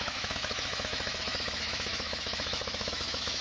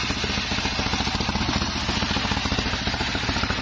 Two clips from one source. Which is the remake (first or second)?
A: first